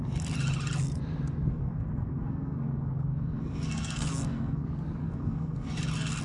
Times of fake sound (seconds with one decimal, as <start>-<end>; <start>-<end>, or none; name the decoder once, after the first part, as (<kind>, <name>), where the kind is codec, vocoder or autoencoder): 1.5-4.6 (codec, SNAC); 5.0-5.7